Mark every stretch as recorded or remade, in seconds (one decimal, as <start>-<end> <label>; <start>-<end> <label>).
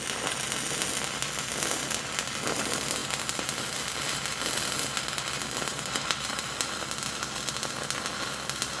0.0-8.8 recorded